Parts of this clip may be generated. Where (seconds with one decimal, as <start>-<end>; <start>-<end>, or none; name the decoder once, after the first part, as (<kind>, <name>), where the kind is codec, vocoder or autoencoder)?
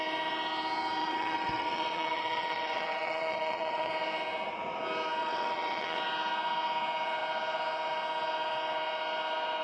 1.0-3.9 (vocoder, WaveNeXt); 5.2-6.0